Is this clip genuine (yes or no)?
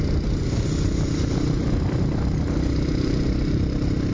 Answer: yes